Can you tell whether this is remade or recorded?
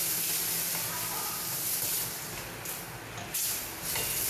recorded